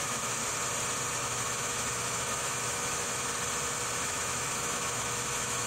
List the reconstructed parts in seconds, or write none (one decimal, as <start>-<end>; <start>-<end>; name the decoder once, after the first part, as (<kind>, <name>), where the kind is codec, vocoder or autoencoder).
0.0-0.4 (autoencoder, DAC-VAE); 1.2-3.3; 4.0-5.7